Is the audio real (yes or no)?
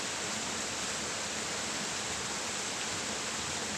yes